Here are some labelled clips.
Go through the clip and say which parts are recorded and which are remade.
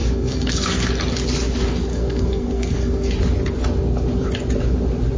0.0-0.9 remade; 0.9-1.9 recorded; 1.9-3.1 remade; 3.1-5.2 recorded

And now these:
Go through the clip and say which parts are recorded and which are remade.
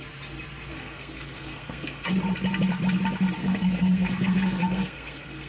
0.0-0.7 recorded; 0.7-2.1 remade; 2.1-3.4 recorded; 3.4-5.5 remade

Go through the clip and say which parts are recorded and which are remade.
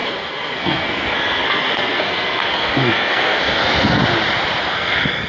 0.0-4.0 remade; 4.0-4.6 recorded; 4.6-5.3 remade